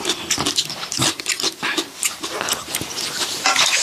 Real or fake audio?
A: real